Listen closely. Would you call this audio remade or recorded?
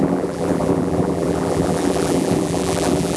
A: remade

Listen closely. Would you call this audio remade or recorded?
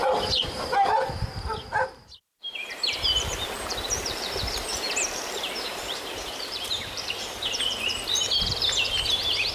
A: remade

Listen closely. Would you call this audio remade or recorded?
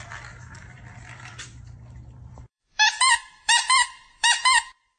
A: remade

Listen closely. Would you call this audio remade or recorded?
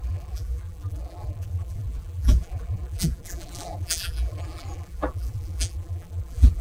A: remade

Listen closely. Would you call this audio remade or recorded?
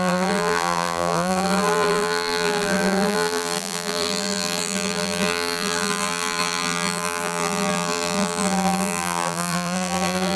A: remade